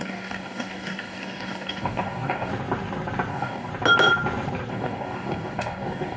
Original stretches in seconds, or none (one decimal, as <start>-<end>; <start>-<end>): 2.5-3.3; 3.7-4.7